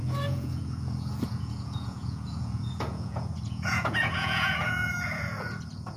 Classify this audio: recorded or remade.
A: remade